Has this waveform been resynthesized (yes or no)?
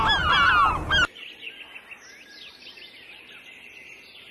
no